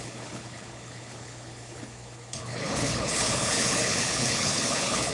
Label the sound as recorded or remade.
remade